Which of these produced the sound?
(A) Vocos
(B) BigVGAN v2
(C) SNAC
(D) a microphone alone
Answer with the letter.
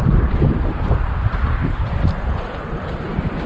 B